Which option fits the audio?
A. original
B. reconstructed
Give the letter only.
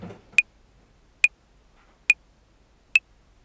A